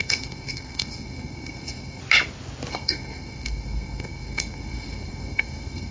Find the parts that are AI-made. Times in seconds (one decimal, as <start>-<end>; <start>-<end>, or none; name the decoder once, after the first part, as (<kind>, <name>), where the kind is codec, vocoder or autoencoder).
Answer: 0.0-2.0 (codec, SNAC); 2.7-5.9